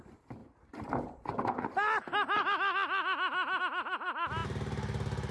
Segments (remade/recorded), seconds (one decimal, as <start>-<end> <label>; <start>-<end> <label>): 0.0-5.3 recorded